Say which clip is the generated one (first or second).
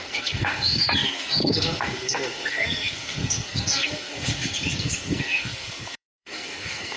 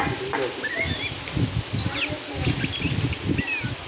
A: first